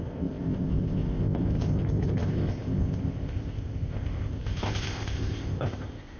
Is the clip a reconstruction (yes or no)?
yes